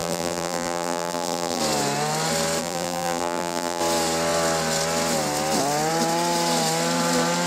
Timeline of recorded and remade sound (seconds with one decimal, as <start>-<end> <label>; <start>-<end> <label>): 0.0-1.6 remade; 1.6-2.6 recorded; 2.6-3.8 remade; 3.8-7.5 recorded